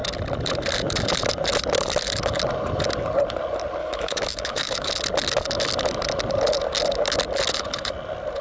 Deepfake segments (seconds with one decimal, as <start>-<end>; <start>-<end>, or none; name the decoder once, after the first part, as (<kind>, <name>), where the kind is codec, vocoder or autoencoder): 3.8-4.9 (autoencoder, DAC-VAE)